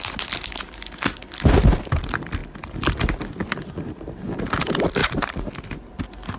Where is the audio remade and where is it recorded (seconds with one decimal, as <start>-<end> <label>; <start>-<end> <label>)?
0.0-5.0 recorded; 5.0-5.5 remade; 5.5-6.4 recorded